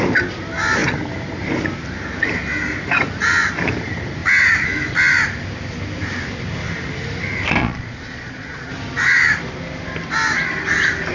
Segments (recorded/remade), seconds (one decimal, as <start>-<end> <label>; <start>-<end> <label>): 0.0-7.6 recorded; 7.6-8.7 remade; 8.7-11.1 recorded